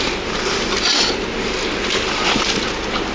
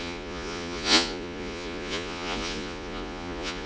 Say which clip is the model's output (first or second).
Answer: second